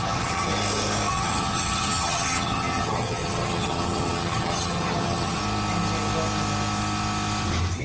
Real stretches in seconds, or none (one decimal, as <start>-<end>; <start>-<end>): 0.5-1.1; 5.4-7.8